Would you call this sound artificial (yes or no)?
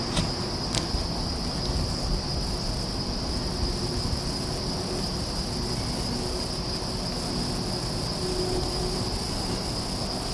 no